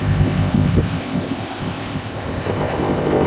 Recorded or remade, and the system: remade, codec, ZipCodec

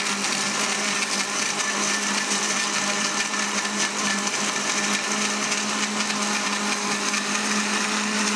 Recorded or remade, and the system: recorded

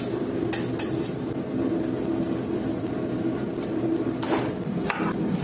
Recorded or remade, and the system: recorded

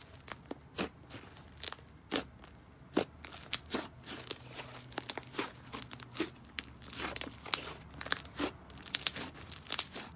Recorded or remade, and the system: recorded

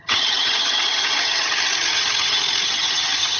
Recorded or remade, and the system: remade, vocoder, HiFi-GAN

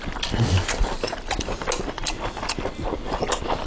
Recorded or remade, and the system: recorded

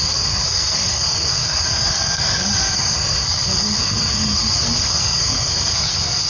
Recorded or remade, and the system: remade, codec, SNAC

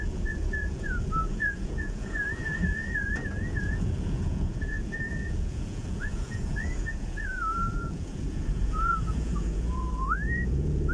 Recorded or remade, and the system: remade, vocoder, Vocos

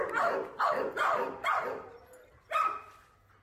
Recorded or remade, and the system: recorded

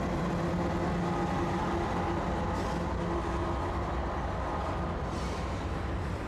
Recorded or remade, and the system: recorded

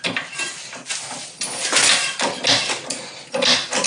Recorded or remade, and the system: recorded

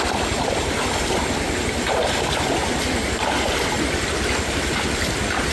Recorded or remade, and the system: recorded